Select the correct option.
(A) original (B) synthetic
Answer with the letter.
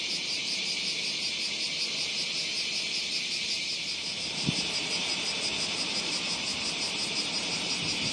A